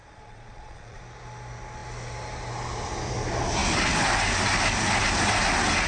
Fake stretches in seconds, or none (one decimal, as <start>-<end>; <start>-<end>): 0.0-1.0